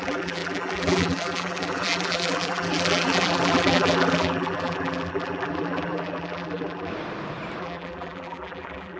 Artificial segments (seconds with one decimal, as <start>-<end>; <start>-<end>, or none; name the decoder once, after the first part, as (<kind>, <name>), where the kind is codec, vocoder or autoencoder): 0.0-6.9 (vocoder, BigVGAN v2); 7.6-9.0